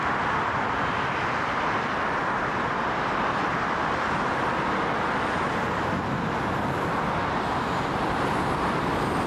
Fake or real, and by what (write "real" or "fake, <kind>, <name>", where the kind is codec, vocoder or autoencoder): real